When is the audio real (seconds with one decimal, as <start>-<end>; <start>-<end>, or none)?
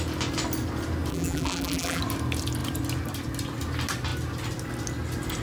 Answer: 0.0-1.1; 2.0-5.4